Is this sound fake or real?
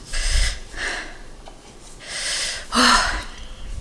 fake